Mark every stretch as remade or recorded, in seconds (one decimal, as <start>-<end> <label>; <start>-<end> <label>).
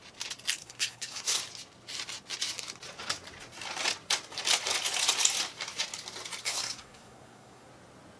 0.0-0.6 recorded; 0.6-1.4 remade; 1.4-6.4 recorded; 6.4-7.7 remade; 7.7-8.2 recorded